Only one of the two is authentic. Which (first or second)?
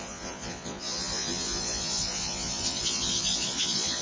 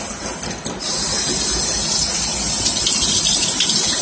second